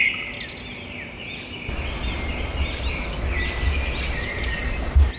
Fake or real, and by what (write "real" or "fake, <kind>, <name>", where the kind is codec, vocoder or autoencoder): real